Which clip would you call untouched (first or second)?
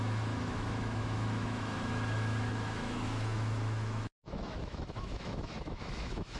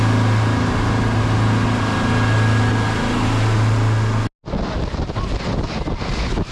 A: second